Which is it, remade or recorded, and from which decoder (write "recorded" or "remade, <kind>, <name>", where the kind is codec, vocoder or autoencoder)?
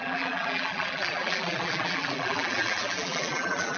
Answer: remade, vocoder, BigVGAN v2